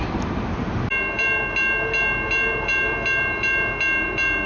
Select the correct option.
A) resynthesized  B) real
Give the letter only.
B